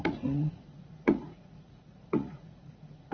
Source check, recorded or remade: remade